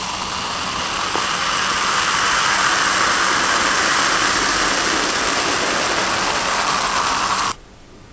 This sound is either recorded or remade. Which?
recorded